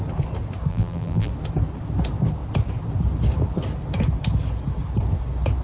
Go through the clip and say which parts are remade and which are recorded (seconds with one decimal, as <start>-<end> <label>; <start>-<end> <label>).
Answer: 0.0-0.7 recorded; 0.7-1.3 remade; 1.3-5.6 recorded